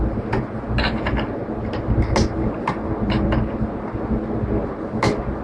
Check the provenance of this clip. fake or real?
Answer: real